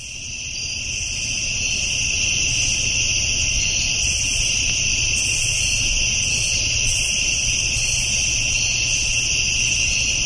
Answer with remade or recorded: recorded